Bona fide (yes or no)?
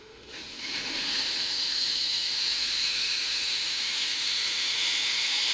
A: no